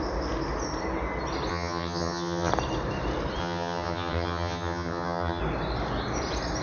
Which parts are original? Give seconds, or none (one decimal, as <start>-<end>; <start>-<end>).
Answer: 0.0-1.5; 2.5-3.4; 5.4-6.6